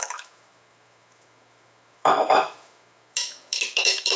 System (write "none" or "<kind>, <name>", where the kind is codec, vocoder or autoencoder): autoencoder, DAC-VAE